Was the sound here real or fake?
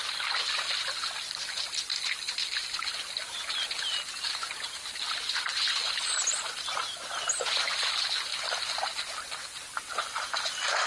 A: real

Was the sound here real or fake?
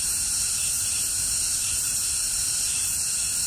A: fake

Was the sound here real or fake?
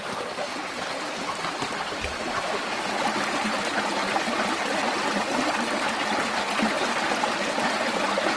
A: real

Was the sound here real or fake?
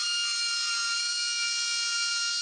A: real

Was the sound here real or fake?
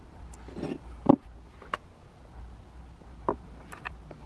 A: real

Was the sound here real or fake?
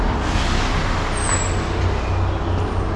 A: real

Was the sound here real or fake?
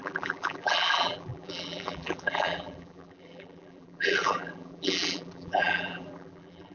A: fake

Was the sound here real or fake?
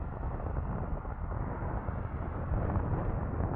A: real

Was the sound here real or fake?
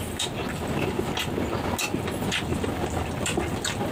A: real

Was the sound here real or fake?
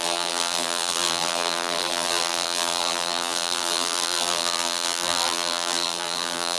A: fake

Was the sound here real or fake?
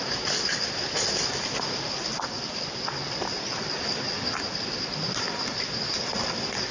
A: real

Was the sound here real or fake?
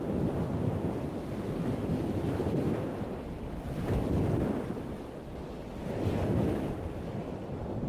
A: real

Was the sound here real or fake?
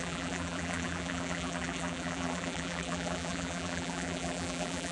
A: fake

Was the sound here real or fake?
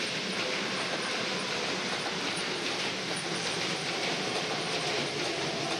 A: real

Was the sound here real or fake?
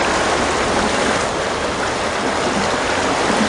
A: real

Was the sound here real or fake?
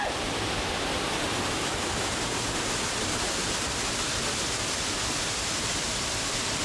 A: fake